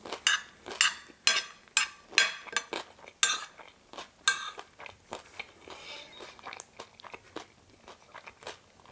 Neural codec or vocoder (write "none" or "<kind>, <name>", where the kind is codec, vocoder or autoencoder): none